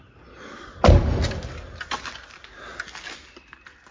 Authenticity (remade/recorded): recorded